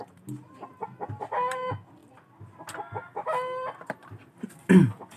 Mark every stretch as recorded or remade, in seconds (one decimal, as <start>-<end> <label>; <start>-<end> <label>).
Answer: 0.0-5.2 recorded